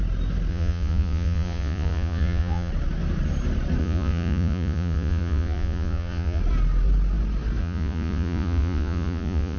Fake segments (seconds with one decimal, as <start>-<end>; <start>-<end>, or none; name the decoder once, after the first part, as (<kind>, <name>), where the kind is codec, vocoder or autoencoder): 0.5-2.7 (vocoder, Vocos); 3.8-6.4; 7.6-9.6